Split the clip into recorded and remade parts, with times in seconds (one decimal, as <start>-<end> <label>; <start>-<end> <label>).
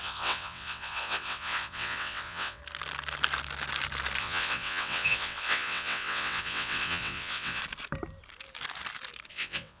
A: 0.0-2.6 remade; 2.6-4.2 recorded; 4.2-7.6 remade; 7.6-9.3 recorded; 9.3-9.8 remade